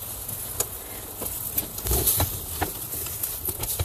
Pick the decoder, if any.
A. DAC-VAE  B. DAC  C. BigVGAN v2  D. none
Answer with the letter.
D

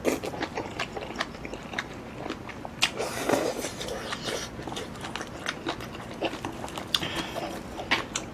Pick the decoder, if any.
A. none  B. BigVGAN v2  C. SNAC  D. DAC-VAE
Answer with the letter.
A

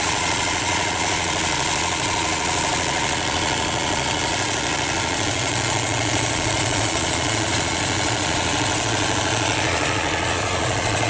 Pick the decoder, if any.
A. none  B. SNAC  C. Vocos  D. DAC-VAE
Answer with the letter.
C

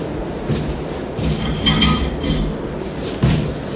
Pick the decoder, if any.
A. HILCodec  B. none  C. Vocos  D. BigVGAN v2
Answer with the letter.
B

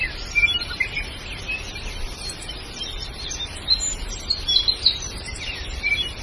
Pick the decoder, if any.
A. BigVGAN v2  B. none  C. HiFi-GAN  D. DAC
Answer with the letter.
A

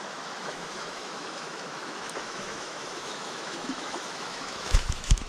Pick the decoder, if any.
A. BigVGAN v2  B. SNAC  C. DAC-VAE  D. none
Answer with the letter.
C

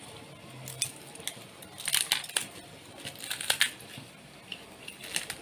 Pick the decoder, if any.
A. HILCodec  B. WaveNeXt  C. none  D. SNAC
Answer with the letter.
C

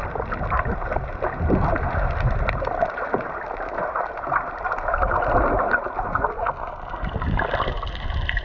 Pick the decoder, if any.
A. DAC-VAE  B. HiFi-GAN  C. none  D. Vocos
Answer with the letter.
C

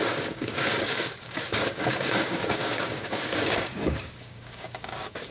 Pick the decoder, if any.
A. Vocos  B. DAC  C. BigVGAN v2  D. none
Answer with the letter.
B